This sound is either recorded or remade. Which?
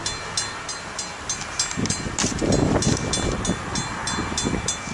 recorded